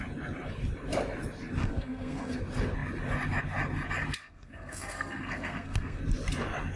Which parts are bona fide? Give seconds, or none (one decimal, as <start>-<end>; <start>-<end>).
0.0-1.6; 2.4-4.2; 6.0-6.8